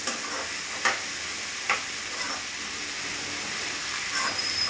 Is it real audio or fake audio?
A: real